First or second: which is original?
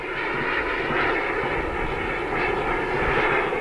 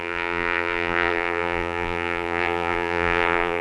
first